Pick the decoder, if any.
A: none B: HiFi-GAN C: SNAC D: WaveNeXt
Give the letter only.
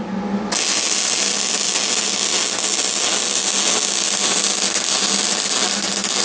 A